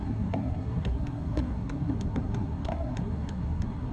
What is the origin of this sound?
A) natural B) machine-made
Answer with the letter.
B